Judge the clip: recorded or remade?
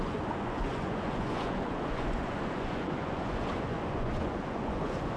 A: remade